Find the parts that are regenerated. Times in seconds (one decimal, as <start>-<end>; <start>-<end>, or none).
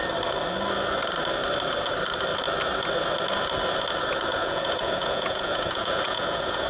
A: 4.4-6.7